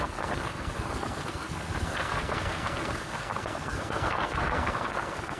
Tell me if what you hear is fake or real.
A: fake